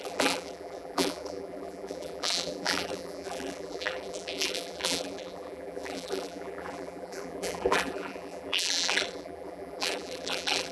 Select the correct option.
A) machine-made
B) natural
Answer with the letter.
A